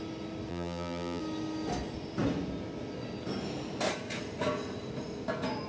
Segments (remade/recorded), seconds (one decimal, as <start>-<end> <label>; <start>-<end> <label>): 0.0-0.5 recorded; 0.5-1.2 remade; 1.2-5.7 recorded